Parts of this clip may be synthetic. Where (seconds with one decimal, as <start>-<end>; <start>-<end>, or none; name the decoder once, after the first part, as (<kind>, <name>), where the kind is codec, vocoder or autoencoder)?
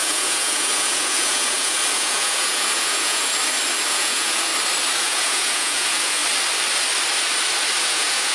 0.0-3.3 (vocoder, Vocos); 3.9-4.5; 5.0-6.2; 7.8-8.3